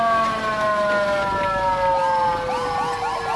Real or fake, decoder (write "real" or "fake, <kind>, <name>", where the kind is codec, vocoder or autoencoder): real